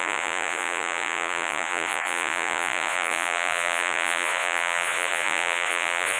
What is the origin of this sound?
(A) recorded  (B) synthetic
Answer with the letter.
B